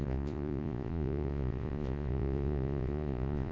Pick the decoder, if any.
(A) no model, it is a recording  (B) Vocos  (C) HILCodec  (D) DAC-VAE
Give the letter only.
B